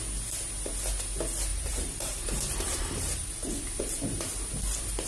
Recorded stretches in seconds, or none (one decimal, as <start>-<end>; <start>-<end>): 0.0-1.5; 3.6-5.1